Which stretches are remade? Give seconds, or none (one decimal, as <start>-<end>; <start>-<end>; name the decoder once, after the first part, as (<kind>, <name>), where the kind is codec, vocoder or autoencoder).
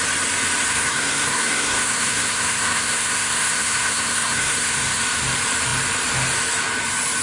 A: 0.7-5.0 (codec, SNAC)